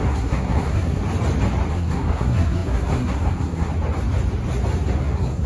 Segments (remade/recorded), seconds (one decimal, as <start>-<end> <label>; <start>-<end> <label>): 0.0-1.0 remade; 1.0-1.7 recorded; 1.7-3.7 remade; 3.7-5.0 recorded; 5.0-5.5 remade